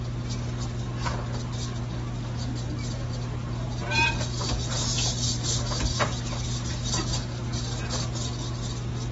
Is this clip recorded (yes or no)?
yes